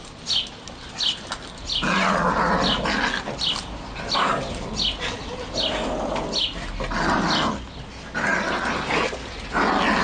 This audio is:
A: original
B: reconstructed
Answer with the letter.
A